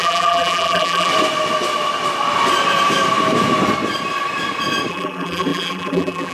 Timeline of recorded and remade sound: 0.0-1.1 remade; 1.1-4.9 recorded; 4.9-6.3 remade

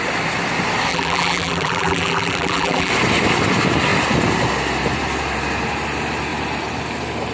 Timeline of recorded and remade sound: 0.0-0.9 recorded; 0.9-2.9 remade; 2.9-7.3 recorded